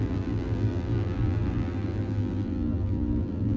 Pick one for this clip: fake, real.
fake